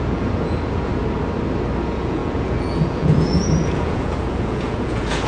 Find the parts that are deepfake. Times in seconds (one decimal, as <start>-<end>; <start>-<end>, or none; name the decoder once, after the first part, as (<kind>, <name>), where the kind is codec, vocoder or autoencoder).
0.0-0.9 (vocoder, Vocos); 1.8-5.3